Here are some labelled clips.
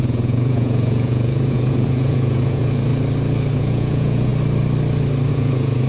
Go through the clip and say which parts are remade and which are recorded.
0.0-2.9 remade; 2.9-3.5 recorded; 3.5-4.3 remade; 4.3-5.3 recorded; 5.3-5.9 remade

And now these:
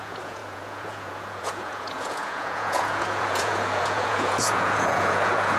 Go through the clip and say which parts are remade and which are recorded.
0.0-5.6 remade

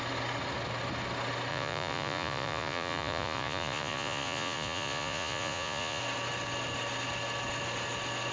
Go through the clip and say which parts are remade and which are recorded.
0.0-1.5 recorded; 1.5-6.0 remade; 6.0-8.3 recorded

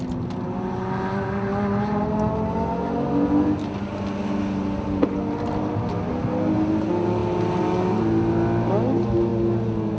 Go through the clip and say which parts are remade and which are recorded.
0.0-10.0 recorded

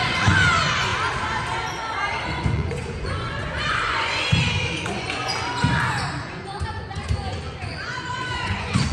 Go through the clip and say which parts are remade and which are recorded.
0.0-0.9 remade; 0.9-2.3 recorded; 2.3-8.9 remade

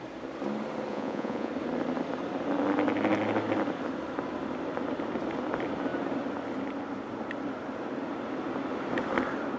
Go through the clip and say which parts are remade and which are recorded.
0.0-0.9 recorded; 0.9-1.5 remade; 1.5-9.6 recorded